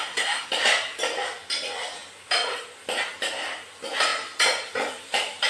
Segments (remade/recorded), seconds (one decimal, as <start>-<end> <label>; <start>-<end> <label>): 0.0-0.5 remade; 0.5-5.5 recorded